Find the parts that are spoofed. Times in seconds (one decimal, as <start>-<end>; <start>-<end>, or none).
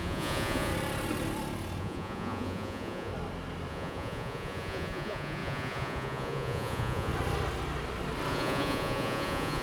0.0-0.7; 1.8-3.1; 3.7-7.1; 8.3-9.6